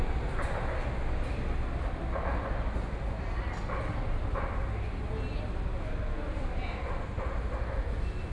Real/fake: real